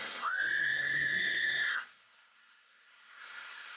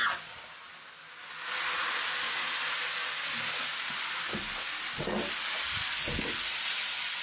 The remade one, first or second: first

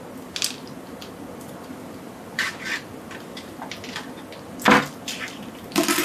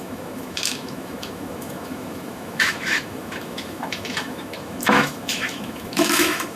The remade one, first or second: second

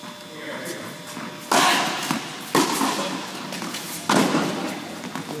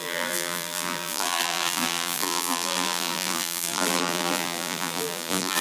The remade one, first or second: second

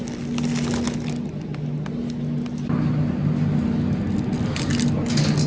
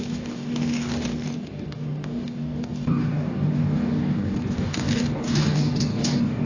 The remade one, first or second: second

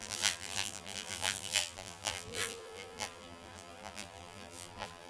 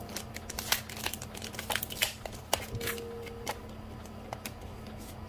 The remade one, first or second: first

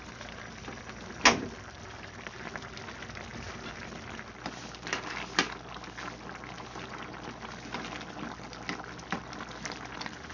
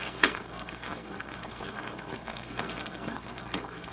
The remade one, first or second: second